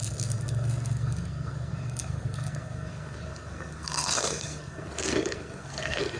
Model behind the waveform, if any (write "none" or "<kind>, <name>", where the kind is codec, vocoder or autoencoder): codec, SNAC